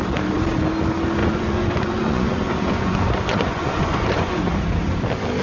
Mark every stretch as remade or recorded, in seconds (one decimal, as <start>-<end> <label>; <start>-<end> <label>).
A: 0.0-1.2 recorded; 1.2-4.4 remade; 4.4-5.4 recorded